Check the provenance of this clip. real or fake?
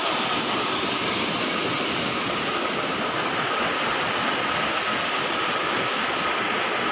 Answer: real